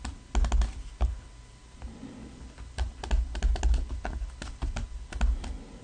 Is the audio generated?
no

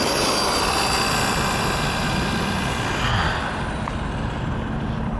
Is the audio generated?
no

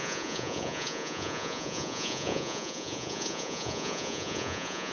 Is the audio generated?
yes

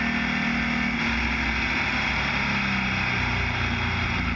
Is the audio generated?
no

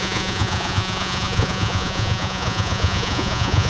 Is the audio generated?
yes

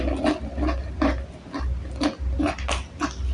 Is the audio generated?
no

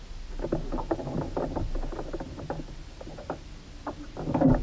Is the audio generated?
no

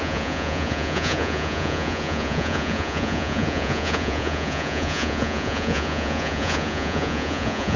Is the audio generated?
yes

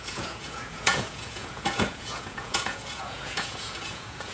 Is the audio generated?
yes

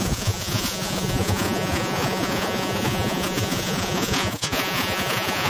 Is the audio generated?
yes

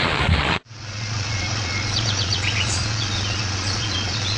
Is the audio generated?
yes